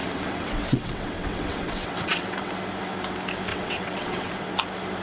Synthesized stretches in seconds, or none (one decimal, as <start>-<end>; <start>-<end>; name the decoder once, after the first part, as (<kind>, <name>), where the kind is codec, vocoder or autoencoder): 0.0-2.5 (vocoder, WaveNeXt); 3.5-4.3

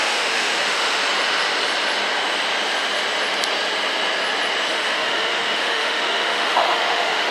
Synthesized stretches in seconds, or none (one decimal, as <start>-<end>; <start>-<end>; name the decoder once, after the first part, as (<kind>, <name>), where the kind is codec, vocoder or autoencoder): 0.0-1.0 (autoencoder, DAC-VAE); 4.7-7.3

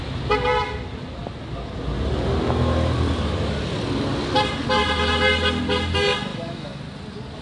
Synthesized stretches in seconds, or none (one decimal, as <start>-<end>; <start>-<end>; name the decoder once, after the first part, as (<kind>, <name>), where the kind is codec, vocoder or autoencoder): 6.3-6.8 (autoencoder, DAC-VAE)

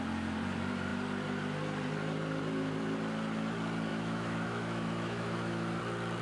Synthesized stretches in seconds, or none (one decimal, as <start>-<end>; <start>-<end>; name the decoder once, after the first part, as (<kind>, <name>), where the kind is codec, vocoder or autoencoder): 3.9-5.8 (autoencoder, DAC-VAE)

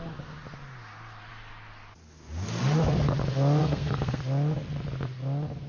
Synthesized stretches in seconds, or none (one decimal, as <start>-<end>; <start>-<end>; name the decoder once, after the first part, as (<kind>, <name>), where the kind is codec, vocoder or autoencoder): 3.6-4.2 (codec, SNAC)

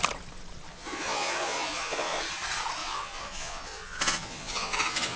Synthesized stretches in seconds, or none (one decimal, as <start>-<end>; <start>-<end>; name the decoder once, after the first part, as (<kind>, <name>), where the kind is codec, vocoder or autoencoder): 0.7-2.2 (vocoder, Vocos); 2.8-5.2

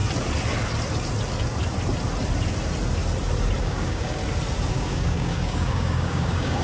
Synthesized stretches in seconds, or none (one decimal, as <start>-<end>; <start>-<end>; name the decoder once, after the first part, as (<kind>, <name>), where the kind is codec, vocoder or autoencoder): 3.6-4.2 (codec, DAC); 4.7-6.6

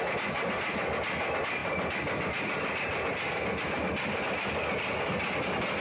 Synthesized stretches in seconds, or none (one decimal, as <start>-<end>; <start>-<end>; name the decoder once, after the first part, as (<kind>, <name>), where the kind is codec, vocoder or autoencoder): none